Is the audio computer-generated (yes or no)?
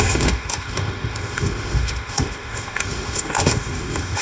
yes